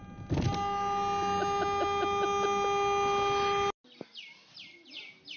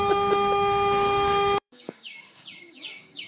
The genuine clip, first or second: first